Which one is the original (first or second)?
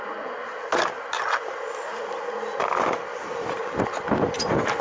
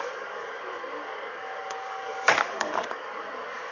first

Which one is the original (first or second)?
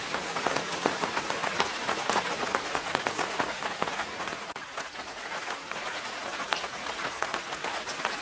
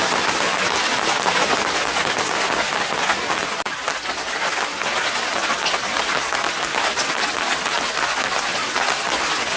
second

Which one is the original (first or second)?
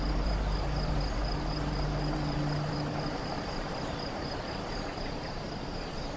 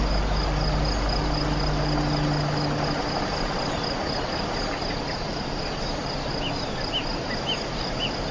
second